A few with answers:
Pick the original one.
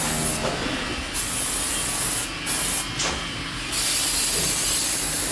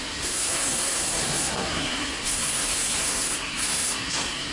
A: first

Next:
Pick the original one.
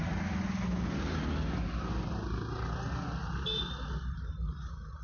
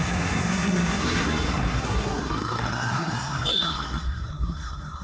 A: first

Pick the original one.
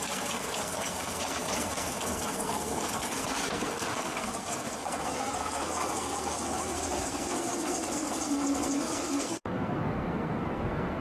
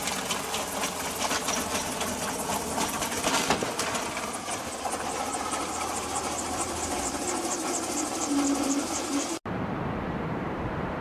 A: second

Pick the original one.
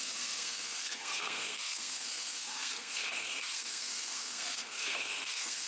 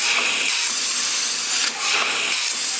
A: second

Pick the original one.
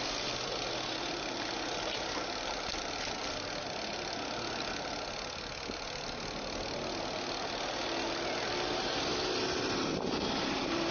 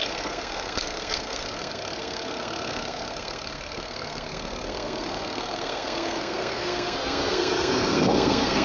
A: first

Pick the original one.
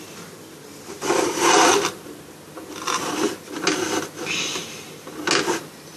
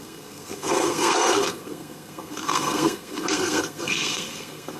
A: first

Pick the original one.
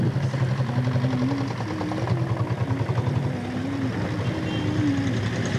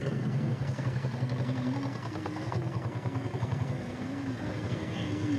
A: first